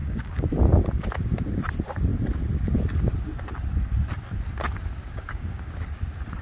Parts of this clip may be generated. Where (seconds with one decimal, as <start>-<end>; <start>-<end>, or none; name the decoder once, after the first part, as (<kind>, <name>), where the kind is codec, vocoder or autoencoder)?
0.0-0.5 (codec, DAC); 5.0-5.8